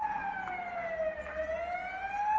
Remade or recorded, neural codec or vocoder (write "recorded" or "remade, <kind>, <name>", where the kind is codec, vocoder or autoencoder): recorded